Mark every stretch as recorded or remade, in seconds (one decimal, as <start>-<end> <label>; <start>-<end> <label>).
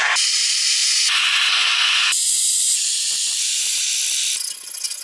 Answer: 0.0-0.8 recorded; 0.8-3.8 remade; 3.8-5.0 recorded